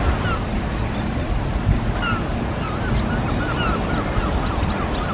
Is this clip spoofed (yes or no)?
no